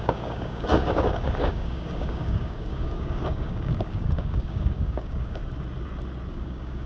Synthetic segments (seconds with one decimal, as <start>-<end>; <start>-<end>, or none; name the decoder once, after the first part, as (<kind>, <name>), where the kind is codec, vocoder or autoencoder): 0.0-5.4 (codec, DAC); 6.3-6.9